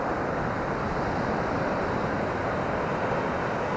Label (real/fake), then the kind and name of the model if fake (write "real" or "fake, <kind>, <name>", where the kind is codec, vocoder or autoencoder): real